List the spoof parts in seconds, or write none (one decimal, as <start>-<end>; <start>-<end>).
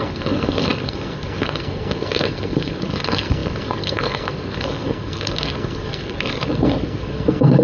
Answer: 0.0-7.6